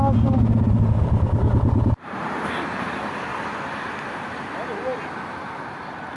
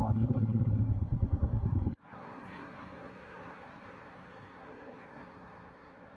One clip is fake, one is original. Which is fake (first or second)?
second